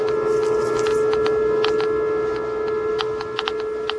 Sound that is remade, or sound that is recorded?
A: recorded